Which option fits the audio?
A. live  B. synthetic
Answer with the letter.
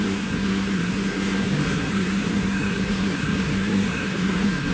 B